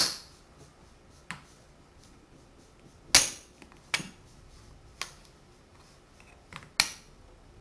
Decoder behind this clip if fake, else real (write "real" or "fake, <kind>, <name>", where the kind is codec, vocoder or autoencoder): real